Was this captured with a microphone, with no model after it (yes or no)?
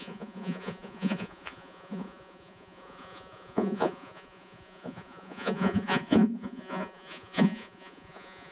no